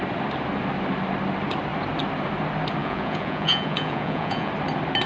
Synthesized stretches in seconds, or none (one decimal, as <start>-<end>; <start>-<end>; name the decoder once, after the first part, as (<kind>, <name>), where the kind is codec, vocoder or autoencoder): 2.8-4.5 (vocoder, Vocos)